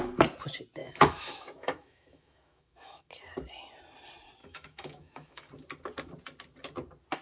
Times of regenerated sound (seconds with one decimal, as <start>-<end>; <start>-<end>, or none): 0.8-3.1; 4.4-5.5